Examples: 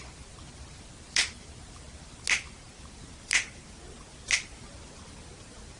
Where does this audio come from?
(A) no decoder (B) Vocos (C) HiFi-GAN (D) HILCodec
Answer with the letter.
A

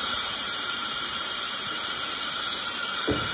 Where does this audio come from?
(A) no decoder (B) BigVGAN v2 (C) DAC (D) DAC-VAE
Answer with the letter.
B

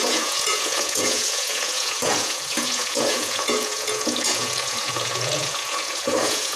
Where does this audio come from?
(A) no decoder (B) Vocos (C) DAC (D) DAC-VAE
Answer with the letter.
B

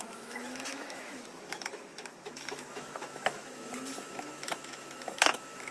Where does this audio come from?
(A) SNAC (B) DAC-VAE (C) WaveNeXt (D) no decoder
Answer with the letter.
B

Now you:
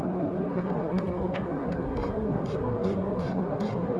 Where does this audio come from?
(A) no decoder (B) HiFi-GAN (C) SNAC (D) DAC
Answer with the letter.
C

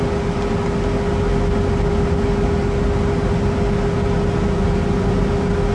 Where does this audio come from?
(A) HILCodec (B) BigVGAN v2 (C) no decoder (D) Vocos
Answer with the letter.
C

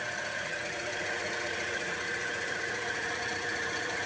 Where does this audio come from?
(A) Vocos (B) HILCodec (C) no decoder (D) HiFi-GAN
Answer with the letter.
A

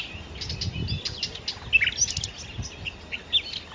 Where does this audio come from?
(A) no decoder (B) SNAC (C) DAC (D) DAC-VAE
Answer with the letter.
A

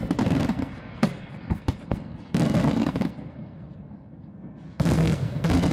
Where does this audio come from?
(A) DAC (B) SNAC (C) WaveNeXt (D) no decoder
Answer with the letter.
B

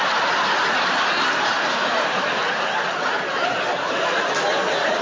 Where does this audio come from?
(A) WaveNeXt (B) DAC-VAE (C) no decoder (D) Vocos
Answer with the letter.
C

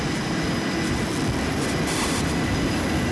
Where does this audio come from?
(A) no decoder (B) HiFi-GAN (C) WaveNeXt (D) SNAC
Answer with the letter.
A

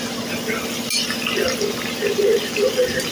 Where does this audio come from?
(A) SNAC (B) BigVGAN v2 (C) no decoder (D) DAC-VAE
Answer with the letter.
C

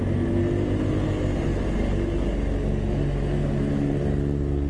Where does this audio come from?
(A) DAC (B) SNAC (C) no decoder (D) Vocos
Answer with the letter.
C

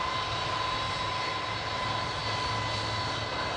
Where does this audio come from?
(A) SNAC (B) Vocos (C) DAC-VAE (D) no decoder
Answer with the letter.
D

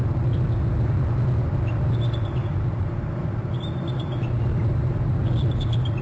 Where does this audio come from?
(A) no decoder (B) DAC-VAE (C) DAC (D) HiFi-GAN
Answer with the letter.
A